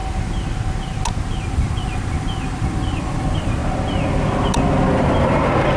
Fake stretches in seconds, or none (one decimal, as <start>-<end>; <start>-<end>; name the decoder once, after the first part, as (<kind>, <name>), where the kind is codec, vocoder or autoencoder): 1.4-3.6 (vocoder, BigVGAN v2); 4.9-5.8